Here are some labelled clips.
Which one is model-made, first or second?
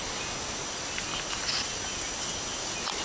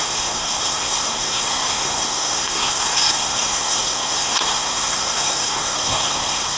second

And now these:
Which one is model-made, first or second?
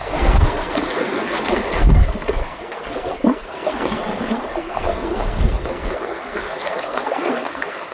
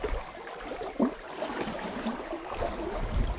first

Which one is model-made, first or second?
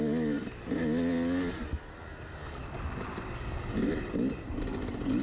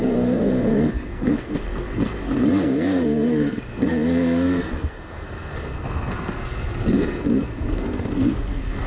second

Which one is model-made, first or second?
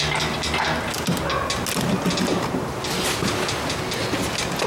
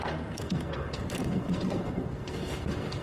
second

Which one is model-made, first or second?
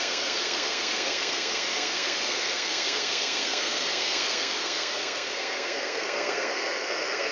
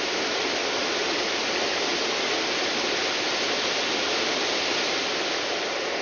first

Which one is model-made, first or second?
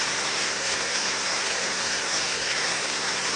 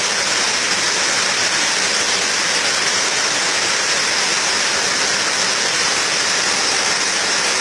first